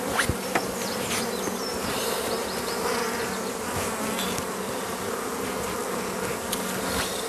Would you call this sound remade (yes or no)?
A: no